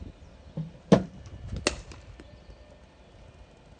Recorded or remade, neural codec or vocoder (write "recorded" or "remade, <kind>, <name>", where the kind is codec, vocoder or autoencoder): recorded